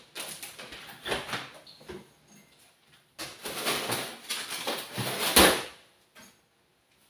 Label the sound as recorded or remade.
recorded